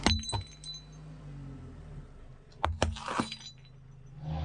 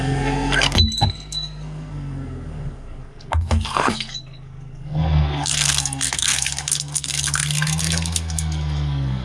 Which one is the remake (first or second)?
second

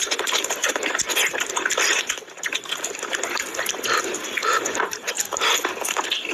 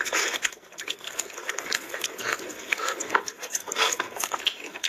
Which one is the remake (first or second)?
second